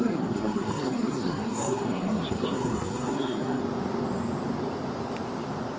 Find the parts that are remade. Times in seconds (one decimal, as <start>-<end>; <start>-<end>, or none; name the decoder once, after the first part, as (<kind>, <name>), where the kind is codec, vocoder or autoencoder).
0.0-3.6 (codec, SNAC)